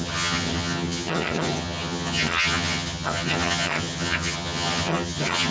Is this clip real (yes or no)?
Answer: no